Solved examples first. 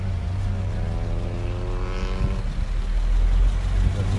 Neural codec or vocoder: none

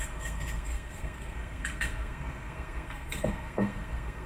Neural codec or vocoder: codec, SNAC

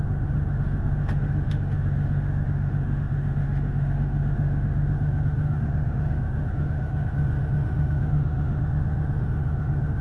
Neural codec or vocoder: autoencoder, DAC-VAE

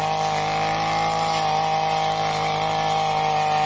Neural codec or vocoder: none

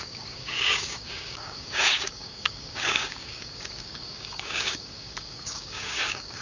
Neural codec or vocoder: codec, DAC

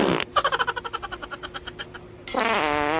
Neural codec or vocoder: none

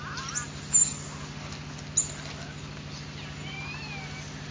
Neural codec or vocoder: none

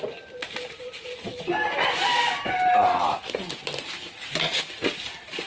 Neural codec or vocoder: none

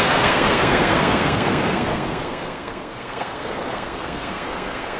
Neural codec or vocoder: codec, SNAC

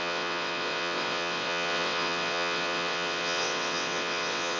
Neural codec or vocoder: vocoder, WaveNeXt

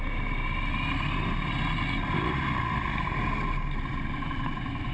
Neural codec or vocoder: none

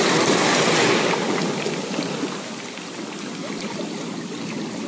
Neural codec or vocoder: none